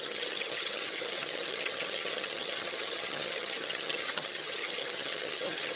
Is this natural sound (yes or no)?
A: no